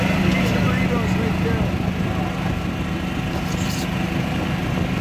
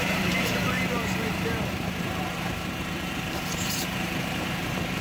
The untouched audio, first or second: first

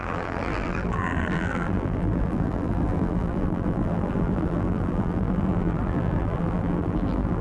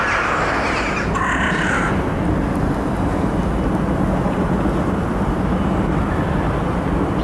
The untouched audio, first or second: second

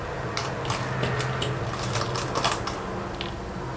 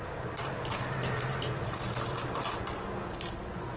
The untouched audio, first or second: first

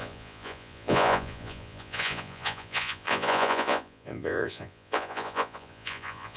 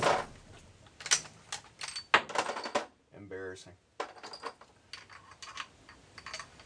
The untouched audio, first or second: second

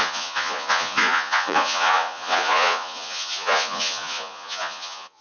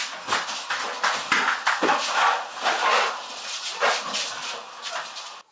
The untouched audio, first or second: second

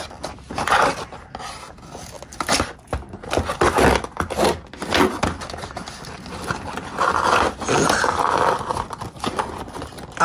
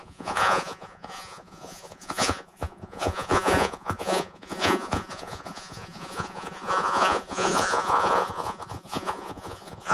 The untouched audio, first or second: first